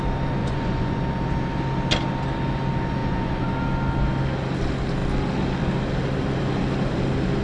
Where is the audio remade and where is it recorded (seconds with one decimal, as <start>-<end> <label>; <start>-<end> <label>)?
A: 0.0-0.4 recorded; 0.4-1.0 remade; 1.0-3.0 recorded; 3.0-3.5 remade; 3.5-7.4 recorded